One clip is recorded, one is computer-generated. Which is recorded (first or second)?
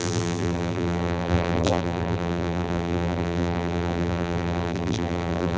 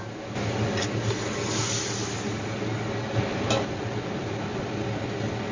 second